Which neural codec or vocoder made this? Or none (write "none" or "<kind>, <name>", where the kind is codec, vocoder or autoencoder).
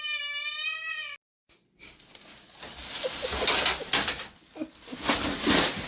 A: none